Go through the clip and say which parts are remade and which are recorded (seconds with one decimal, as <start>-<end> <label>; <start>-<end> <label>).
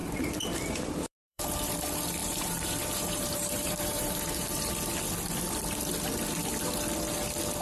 0.0-1.7 remade; 1.7-2.2 recorded; 2.2-4.7 remade; 4.7-7.6 recorded